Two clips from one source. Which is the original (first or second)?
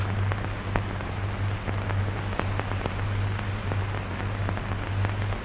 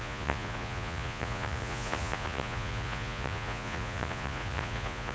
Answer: first